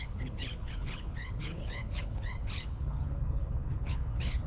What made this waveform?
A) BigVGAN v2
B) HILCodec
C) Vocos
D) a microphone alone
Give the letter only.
B